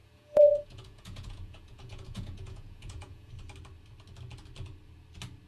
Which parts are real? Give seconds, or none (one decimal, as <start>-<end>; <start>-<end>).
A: 3.3-5.5